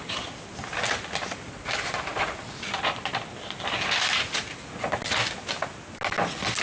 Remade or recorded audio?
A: recorded